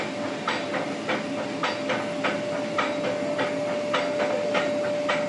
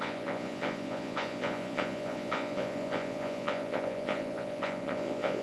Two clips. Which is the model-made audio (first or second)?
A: second